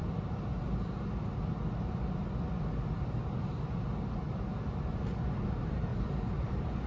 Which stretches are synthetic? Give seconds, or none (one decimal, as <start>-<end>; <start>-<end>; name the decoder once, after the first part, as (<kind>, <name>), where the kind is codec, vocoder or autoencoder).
none